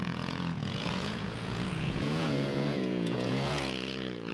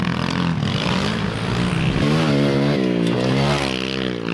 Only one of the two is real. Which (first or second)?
second